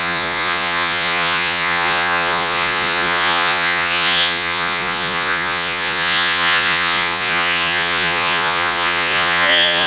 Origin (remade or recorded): remade